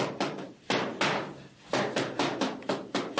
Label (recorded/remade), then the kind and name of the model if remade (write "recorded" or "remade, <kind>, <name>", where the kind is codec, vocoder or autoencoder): recorded